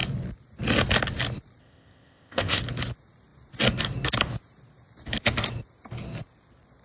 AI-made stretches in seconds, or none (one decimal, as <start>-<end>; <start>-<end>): 1.6-2.6